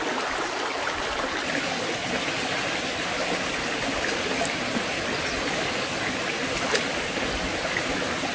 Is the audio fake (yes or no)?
no